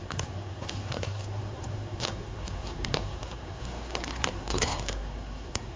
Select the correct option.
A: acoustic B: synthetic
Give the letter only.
B